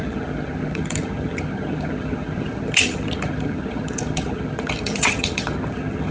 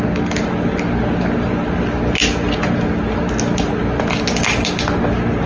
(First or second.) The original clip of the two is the second